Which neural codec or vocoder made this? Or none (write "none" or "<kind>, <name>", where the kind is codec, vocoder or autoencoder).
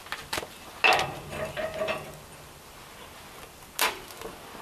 none